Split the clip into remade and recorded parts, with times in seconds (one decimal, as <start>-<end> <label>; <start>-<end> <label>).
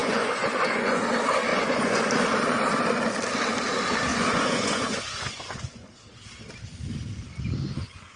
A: 0.0-1.0 remade; 1.0-1.5 recorded; 1.5-2.0 remade; 2.0-4.1 recorded; 4.1-5.9 remade; 5.9-8.2 recorded